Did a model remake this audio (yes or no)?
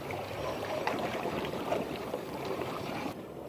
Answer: yes